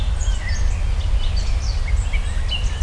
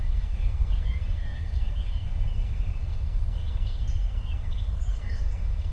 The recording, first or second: first